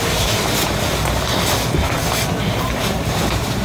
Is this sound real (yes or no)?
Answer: no